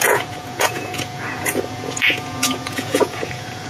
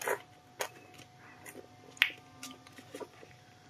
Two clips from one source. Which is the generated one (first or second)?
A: first